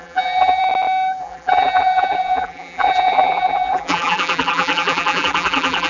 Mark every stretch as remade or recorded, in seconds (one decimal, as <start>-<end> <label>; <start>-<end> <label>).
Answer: 0.0-0.6 remade; 0.6-1.2 recorded; 1.2-5.9 remade